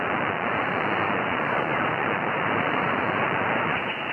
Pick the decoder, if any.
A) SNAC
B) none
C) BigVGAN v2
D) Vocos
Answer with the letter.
D